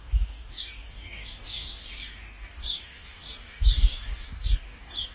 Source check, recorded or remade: remade